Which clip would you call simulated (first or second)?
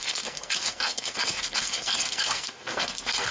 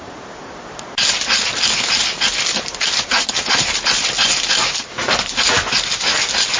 first